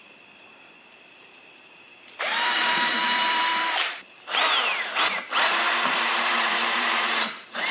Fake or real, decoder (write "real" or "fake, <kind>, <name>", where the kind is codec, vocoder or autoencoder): fake, vocoder, BigVGAN v2